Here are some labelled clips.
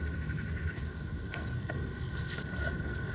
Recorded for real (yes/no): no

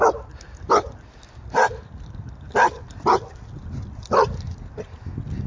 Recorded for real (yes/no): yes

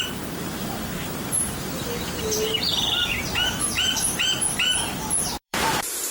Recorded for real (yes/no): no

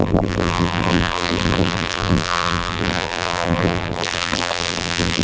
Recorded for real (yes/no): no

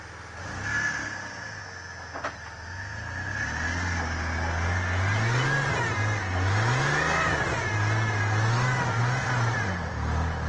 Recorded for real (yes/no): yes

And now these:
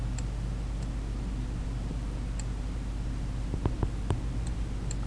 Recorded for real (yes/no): no